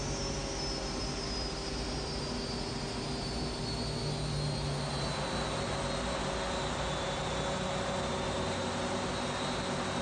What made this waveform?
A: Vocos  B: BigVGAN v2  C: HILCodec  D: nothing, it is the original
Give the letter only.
D